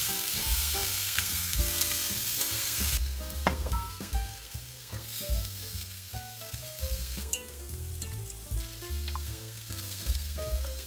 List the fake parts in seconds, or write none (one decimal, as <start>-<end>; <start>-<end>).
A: 0.0-7.9; 8.9-10.9